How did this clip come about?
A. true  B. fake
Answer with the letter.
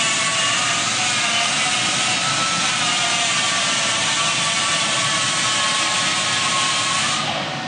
A